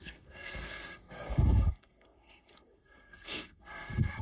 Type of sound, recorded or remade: remade